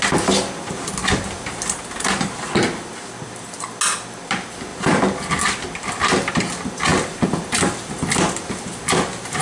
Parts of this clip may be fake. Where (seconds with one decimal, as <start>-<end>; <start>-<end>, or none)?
none